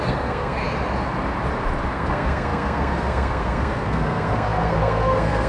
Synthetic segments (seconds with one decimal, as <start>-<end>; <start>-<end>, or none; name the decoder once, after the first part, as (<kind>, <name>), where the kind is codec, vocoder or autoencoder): 0.0-0.6 (codec, SNAC); 1.9-5.5